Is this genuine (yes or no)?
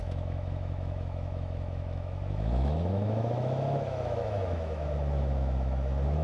no